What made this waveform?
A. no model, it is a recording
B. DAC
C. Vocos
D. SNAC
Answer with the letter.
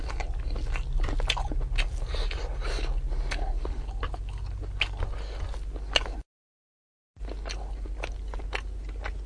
A